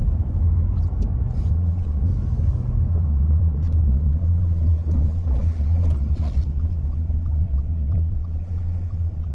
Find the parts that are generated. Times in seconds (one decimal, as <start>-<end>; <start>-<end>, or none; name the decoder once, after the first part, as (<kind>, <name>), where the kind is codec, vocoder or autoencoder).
1.5-2.1 (vocoder, Vocos); 2.9-9.3